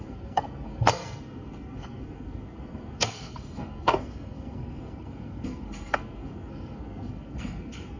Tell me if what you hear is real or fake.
fake